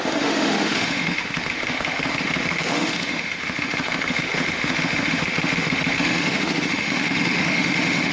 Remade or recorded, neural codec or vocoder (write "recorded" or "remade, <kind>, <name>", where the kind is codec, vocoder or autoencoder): remade, autoencoder, DAC-VAE